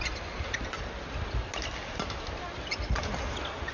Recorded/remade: recorded